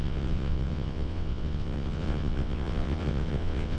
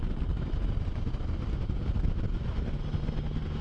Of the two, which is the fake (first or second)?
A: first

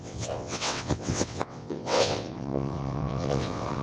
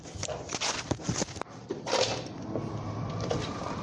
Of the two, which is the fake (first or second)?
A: first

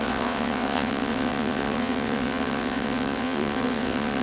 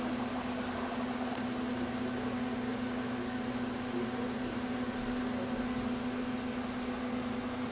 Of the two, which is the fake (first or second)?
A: first